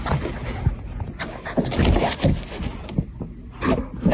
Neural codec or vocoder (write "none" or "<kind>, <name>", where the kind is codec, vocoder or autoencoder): none